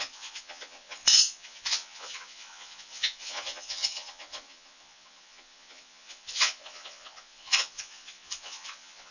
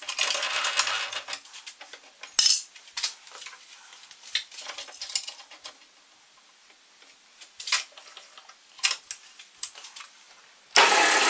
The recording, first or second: second